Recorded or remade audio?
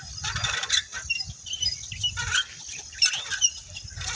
recorded